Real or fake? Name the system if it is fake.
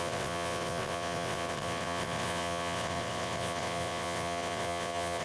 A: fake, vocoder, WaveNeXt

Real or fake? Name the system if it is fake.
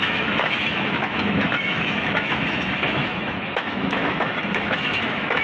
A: fake, autoencoder, DAC-VAE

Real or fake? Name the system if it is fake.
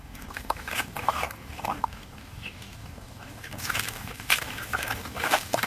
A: fake, codec, DAC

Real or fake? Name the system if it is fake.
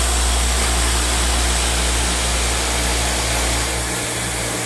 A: real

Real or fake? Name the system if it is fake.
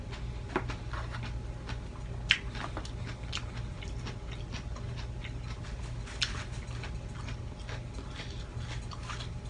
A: real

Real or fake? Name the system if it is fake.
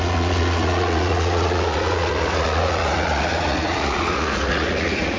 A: fake, vocoder, Vocos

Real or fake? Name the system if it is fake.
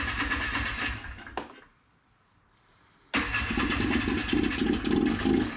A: real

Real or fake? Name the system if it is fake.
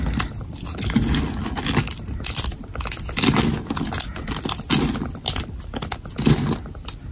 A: real